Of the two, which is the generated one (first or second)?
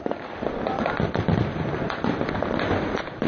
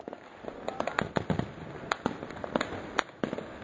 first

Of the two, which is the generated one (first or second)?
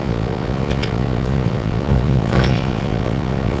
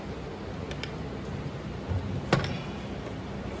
first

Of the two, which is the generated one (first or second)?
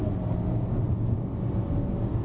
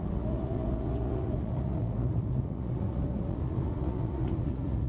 second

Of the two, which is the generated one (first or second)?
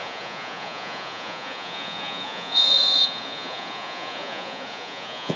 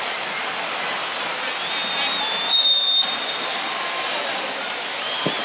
first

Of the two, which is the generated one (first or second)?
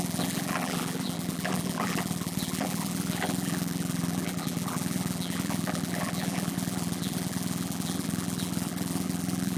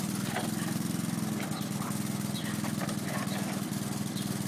first